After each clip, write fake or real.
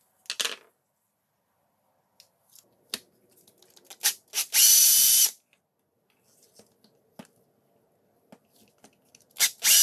real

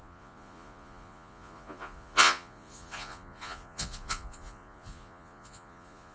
fake